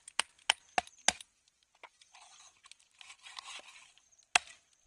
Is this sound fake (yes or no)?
no